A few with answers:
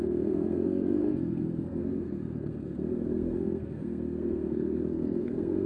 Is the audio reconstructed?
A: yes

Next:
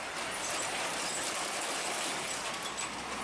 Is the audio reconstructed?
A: no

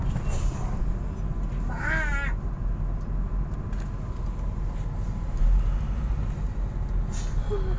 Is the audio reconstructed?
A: no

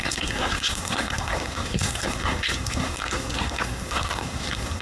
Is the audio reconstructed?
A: yes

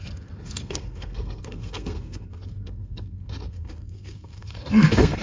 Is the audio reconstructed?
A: yes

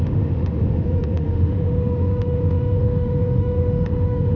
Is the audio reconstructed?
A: yes